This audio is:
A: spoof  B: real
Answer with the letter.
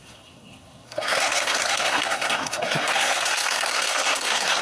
A